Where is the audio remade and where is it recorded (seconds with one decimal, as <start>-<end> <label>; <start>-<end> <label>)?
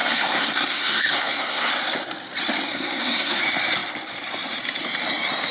0.0-1.7 remade; 1.7-2.7 recorded; 2.7-3.4 remade; 3.4-5.5 recorded